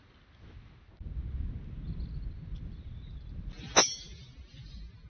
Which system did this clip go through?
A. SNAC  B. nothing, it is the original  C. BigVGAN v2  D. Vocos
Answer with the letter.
B